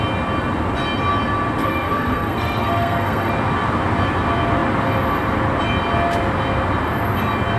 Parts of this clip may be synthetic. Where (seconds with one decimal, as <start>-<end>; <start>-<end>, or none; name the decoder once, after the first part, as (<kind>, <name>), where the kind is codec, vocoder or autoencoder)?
1.6-3.3 (codec, SNAC)